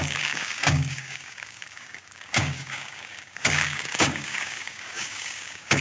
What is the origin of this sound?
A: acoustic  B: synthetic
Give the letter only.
B